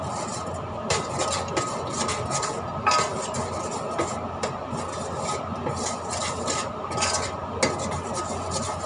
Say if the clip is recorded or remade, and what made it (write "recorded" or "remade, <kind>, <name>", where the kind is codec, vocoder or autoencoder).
recorded